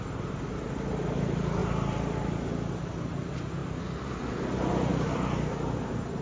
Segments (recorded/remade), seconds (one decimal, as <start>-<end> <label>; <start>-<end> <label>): 0.0-1.6 recorded; 1.6-2.5 remade; 2.5-4.9 recorded; 4.9-5.8 remade; 5.8-6.2 recorded